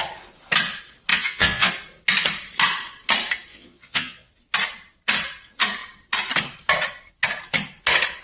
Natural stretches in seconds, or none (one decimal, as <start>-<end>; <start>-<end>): 0.0-1.1; 1.7-3.5; 4.3-8.2